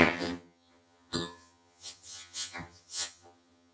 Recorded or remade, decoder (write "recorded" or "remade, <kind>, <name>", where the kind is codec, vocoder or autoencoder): remade, vocoder, HiFi-GAN